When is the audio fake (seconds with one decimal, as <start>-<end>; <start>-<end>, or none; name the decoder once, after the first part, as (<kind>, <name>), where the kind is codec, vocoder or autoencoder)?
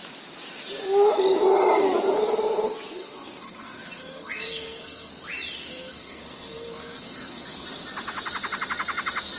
3.0-5.1 (codec, SNAC); 5.7-7.8